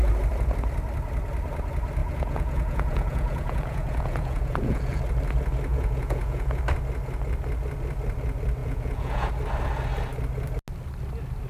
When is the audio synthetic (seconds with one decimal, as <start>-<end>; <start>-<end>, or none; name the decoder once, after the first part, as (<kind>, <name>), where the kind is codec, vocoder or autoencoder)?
2.0-5.0 (vocoder, Vocos); 5.7-6.6; 8.6-9.3